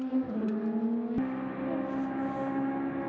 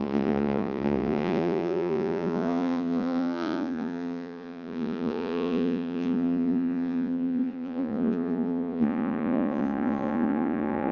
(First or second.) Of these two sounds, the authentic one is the first